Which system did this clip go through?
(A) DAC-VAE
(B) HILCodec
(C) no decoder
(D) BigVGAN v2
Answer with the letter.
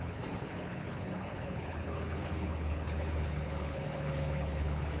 B